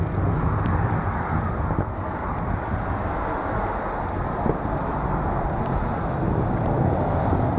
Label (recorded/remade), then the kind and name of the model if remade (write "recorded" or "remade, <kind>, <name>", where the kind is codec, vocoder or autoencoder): recorded